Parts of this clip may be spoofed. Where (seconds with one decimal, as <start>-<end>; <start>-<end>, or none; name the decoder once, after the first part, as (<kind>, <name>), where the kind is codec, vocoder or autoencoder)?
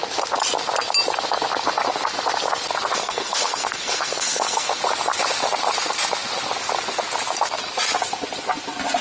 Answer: 3.0-4.8 (codec, SNAC)